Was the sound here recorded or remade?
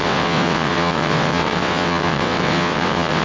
remade